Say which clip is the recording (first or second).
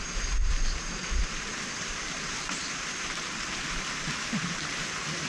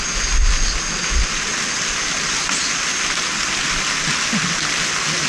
second